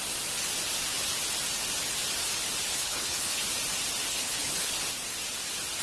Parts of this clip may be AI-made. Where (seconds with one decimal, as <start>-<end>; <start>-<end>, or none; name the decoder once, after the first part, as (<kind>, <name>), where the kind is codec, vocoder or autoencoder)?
2.7-3.4 (codec, HILCodec); 4.1-4.7